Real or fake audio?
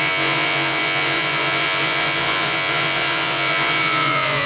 fake